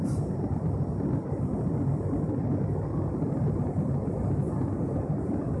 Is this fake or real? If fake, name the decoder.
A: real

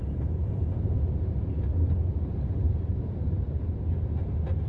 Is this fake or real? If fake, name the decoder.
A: real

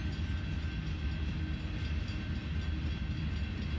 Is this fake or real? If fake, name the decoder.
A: real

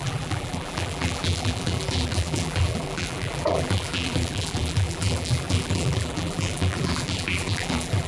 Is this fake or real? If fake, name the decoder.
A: fake, vocoder, BigVGAN v2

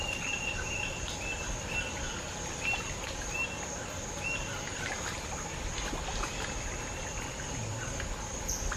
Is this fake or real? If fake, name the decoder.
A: real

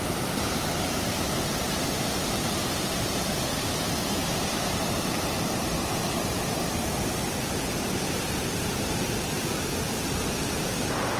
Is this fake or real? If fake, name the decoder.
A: fake, vocoder, BigVGAN v2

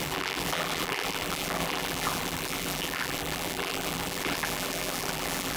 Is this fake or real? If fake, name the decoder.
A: fake, vocoder, BigVGAN v2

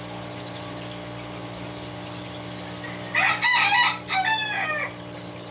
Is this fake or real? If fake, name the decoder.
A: real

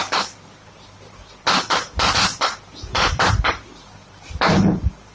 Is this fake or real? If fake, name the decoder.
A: fake, vocoder, BigVGAN v2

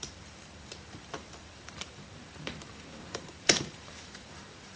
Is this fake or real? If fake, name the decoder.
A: fake, vocoder, BigVGAN v2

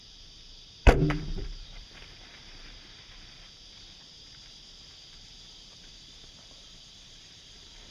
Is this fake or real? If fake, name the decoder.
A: fake, vocoder, BigVGAN v2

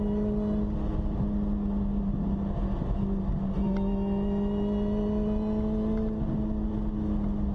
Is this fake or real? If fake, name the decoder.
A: real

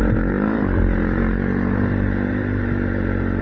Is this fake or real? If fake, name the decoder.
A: fake, vocoder, BigVGAN v2